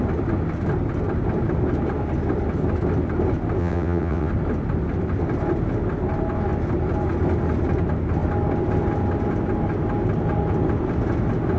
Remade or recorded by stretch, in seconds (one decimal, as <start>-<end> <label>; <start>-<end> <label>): 0.0-3.6 recorded; 3.6-4.3 remade; 4.3-11.6 recorded